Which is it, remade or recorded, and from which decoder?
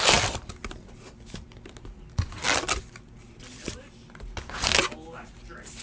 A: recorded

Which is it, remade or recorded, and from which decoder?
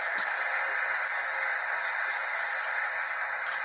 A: remade, vocoder, BigVGAN v2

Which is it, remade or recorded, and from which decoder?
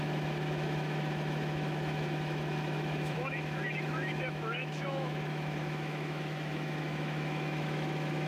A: remade, autoencoder, DAC-VAE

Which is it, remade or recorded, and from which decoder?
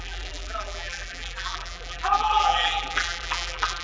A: remade, vocoder, BigVGAN v2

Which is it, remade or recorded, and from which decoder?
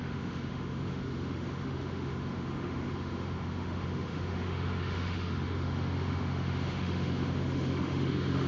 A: remade, autoencoder, DAC-VAE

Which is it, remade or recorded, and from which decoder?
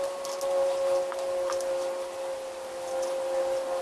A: recorded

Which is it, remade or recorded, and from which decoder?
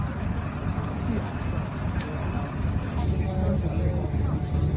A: recorded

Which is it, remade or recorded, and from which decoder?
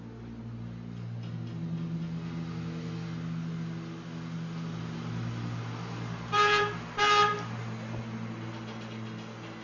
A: recorded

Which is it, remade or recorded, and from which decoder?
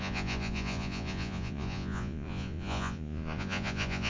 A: remade, vocoder, Vocos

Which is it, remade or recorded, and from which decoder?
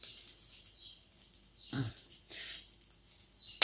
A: recorded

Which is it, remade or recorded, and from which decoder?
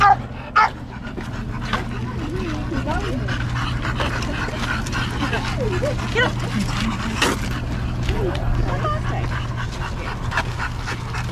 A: recorded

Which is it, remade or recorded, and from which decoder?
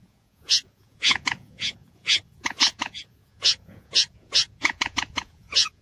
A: remade, vocoder, Vocos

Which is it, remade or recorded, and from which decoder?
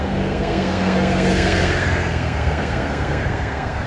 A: remade, codec, SNAC